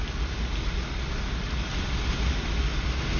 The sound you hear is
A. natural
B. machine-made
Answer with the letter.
A